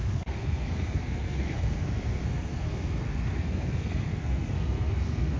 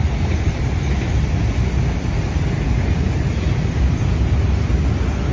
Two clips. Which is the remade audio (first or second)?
first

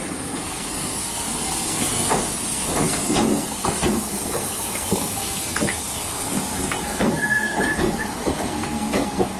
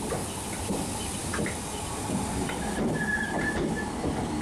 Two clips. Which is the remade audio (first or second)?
first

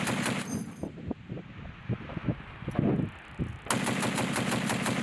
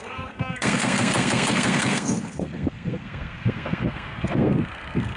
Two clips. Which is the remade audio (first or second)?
second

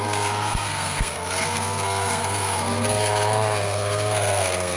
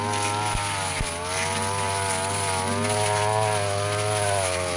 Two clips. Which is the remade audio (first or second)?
first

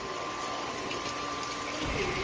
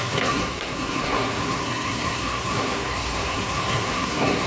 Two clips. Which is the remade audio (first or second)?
second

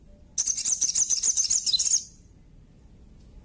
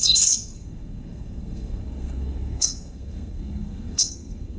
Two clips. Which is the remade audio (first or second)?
second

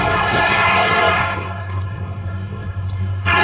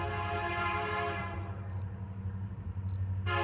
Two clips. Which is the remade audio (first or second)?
first